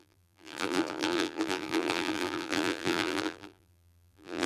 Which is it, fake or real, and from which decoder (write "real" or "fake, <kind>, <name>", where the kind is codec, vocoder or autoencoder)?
fake, vocoder, BigVGAN v2